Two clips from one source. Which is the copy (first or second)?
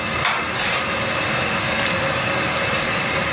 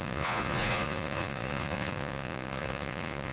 second